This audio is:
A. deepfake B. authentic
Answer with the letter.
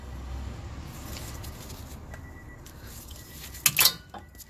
B